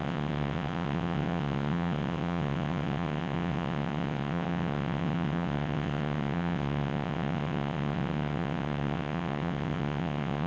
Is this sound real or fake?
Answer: fake